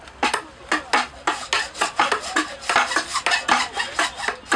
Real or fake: real